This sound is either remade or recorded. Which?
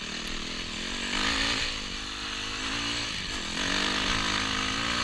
recorded